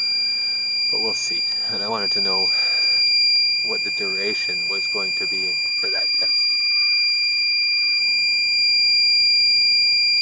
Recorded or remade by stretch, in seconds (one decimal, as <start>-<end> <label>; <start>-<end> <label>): 0.0-5.7 recorded; 5.7-8.0 remade; 8.0-10.2 recorded